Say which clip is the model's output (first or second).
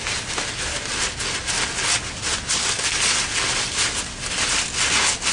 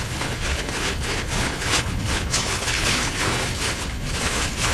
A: second